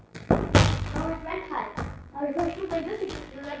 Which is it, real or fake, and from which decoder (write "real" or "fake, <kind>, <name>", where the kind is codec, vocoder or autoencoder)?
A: fake, vocoder, BigVGAN v2